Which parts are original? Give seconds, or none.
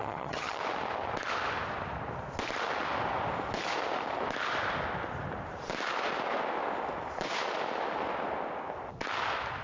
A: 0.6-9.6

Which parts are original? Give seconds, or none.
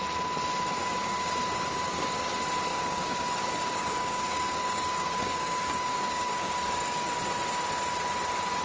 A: 0.0-0.8; 2.3-2.7; 7.1-8.6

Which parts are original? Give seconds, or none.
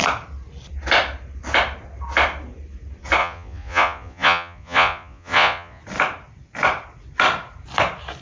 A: 0.0-3.2; 5.8-8.2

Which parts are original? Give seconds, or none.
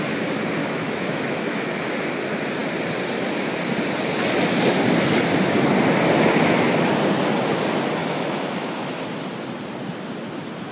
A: 0.0-0.6; 1.8-8.0; 8.9-10.7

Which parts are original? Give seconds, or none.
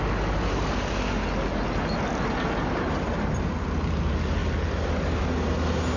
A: 0.0-6.0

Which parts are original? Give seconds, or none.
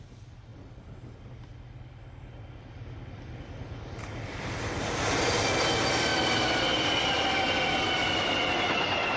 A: 0.0-6.1; 7.3-9.2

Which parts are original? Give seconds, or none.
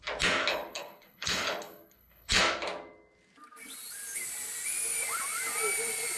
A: 0.0-0.5; 2.4-6.2